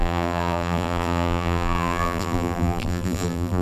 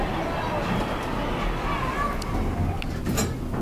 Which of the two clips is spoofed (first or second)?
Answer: first